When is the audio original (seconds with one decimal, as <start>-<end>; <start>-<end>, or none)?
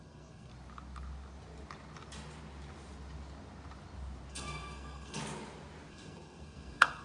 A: 0.5-4.3; 5.2-5.9